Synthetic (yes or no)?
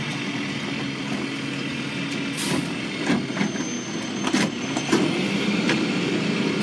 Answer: no